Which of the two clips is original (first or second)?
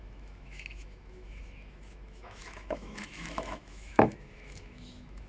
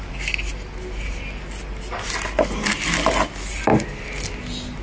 second